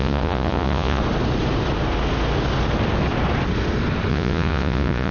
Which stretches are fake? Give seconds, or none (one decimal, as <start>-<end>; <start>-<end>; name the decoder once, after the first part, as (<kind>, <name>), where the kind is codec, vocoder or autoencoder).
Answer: 0.0-1.0 (vocoder, Vocos); 4.1-5.1